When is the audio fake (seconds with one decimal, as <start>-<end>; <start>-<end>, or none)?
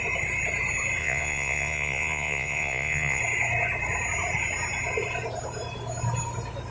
1.0-3.2